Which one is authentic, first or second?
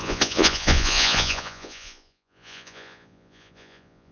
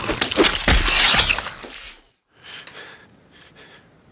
second